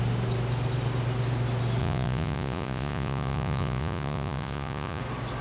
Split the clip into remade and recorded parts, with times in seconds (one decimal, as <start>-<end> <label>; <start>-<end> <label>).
0.0-1.8 recorded; 1.8-5.0 remade; 5.0-5.4 recorded